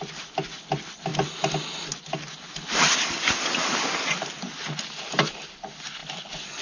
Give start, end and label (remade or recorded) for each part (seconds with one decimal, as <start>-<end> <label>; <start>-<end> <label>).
0.0-1.1 remade; 1.1-5.1 recorded; 5.1-6.6 remade